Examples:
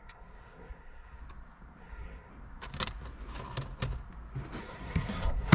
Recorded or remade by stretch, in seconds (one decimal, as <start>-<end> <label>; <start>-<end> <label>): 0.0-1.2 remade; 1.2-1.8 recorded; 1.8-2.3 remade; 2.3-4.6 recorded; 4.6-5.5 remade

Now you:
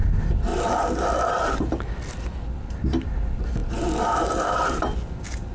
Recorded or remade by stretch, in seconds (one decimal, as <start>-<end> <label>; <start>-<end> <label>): 0.0-5.5 recorded

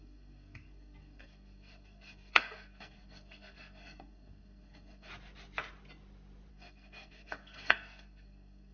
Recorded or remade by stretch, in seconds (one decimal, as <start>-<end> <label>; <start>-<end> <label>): 0.0-5.1 remade; 5.1-6.5 recorded; 6.5-8.7 remade

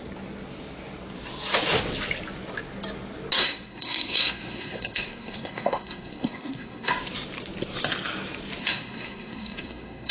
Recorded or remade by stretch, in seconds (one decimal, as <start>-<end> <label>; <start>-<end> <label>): 0.0-3.4 recorded; 3.4-6.9 remade; 6.9-8.6 recorded; 8.6-10.1 remade

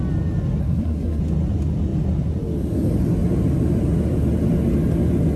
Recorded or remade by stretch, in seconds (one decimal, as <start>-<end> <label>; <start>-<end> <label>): 0.0-0.6 recorded; 0.6-1.2 remade; 1.2-5.4 recorded

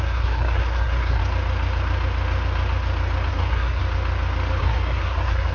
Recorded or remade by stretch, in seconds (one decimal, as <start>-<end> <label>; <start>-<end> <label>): 0.0-1.2 remade; 1.2-3.3 recorded; 3.3-3.8 remade; 3.8-4.6 recorded; 4.6-5.5 remade

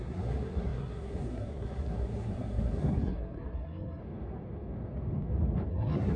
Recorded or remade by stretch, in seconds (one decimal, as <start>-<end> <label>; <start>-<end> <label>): 0.0-4.0 remade; 4.0-5.7 recorded; 5.7-6.2 remade